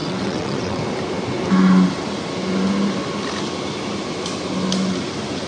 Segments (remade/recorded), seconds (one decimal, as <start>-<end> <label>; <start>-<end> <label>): 0.0-0.8 remade; 0.8-5.5 recorded